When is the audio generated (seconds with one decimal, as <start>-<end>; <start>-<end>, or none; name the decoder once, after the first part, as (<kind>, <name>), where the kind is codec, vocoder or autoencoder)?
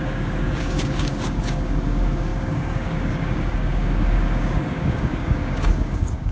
0.0-6.3 (codec, DAC)